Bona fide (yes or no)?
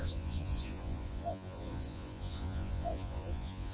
no